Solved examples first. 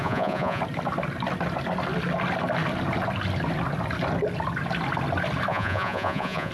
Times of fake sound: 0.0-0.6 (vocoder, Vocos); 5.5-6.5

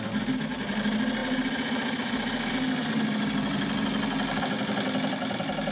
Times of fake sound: none